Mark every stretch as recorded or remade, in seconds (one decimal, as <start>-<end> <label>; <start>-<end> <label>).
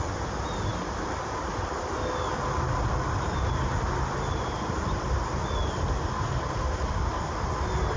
0.0-0.7 recorded; 0.7-2.5 remade; 2.5-3.7 recorded; 3.7-5.3 remade; 5.3-8.0 recorded